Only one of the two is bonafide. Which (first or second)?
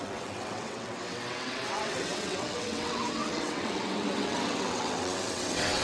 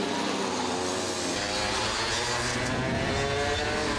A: second